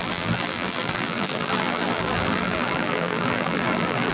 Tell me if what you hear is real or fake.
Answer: fake